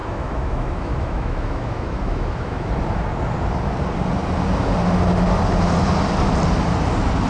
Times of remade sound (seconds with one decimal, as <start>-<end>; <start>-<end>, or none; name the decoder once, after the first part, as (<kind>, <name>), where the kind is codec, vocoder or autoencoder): 0.0-2.7 (autoencoder, DAC-VAE)